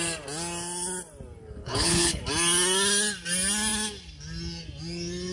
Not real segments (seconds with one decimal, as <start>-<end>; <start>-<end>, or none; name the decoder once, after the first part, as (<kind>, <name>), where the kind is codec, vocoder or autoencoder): 1.6-2.2 (codec, HILCodec)